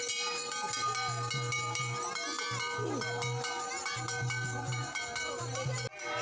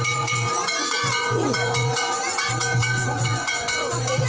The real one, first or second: first